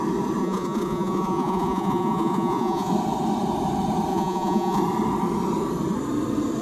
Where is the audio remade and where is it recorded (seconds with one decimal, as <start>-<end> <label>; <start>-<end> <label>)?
0.0-0.4 recorded; 0.4-2.9 remade; 2.9-4.1 recorded; 4.1-4.8 remade; 4.8-6.6 recorded